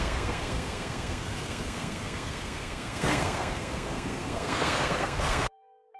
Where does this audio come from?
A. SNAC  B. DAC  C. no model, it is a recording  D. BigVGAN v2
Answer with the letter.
A